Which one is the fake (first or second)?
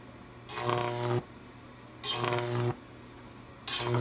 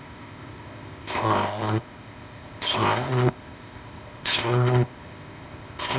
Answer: second